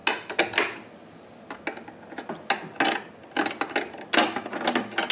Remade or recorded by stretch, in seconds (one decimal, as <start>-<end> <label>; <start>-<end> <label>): 0.0-5.1 recorded